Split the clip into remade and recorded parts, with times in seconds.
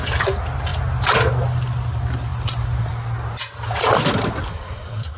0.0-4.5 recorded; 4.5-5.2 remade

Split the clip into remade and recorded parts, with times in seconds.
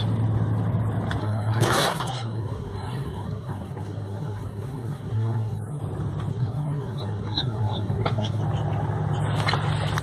0.0-1.2 recorded; 1.2-5.8 remade; 5.8-6.3 recorded; 6.3-8.4 remade; 8.4-10.0 recorded